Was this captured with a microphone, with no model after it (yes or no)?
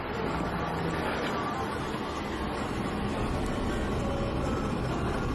yes